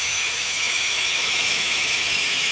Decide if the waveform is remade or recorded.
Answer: remade